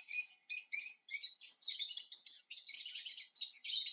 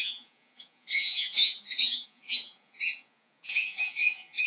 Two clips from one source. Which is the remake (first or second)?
second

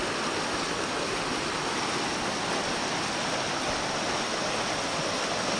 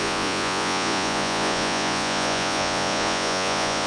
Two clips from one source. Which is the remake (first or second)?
second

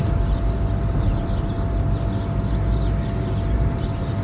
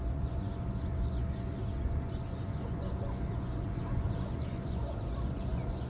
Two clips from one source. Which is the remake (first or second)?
second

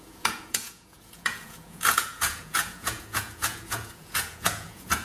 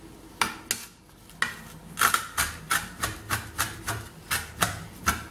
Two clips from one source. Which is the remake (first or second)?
first